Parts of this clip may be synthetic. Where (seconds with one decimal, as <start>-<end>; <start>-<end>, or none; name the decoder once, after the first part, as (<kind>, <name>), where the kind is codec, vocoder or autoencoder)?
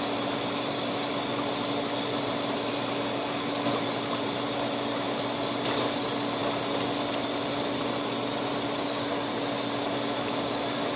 none